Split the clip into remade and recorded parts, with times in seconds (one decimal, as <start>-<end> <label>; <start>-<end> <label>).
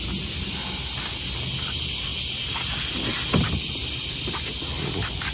0.0-5.3 recorded